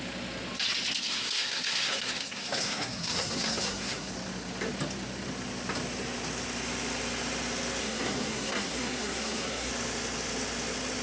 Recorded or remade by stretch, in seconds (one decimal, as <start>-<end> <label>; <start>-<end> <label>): 0.0-1.0 recorded; 1.0-4.1 remade; 4.1-7.8 recorded; 7.8-9.7 remade; 9.7-11.0 recorded